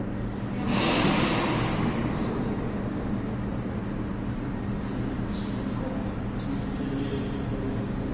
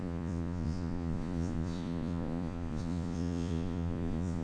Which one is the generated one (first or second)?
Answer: second